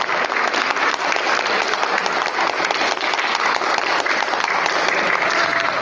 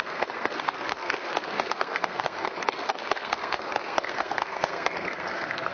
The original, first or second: first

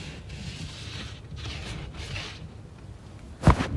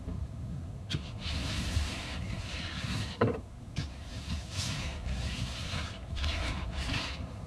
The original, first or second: first